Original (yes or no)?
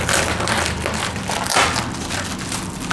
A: yes